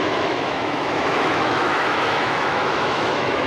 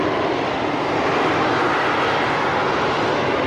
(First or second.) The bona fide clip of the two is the second